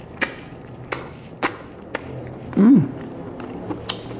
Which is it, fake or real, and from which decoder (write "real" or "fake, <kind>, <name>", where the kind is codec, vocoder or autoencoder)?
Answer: real